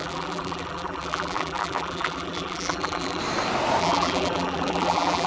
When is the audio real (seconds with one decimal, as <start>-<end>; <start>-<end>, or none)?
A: 3.2-3.8